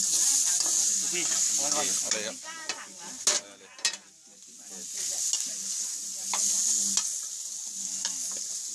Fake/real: real